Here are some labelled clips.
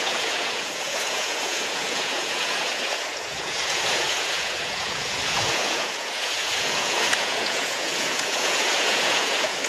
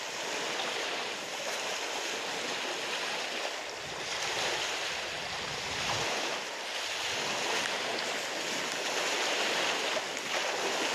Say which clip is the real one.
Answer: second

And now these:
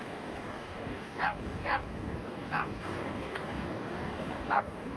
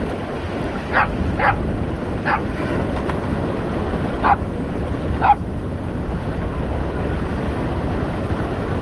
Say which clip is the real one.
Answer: second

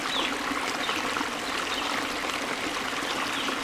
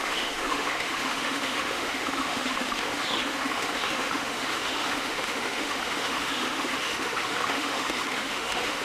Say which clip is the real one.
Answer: first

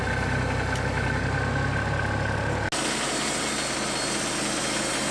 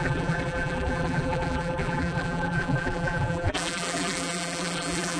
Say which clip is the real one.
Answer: first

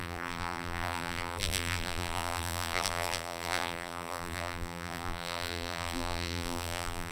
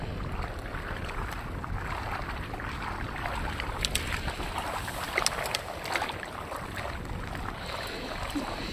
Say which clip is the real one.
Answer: second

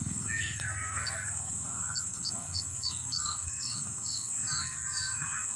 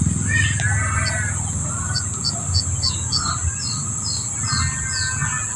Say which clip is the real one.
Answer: second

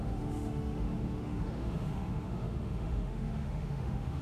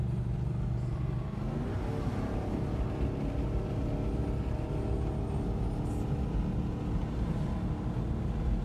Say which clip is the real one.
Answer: second